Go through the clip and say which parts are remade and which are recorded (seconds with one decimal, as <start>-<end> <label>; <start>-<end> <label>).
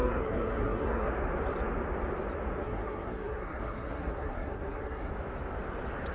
0.0-1.1 remade; 1.1-2.6 recorded; 2.6-5.1 remade; 5.1-6.1 recorded